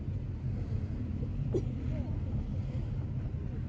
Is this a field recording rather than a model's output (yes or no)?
yes